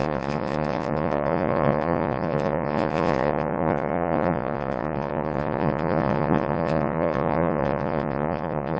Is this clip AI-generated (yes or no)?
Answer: yes